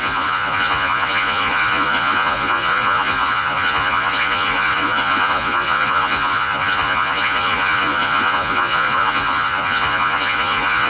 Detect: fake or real fake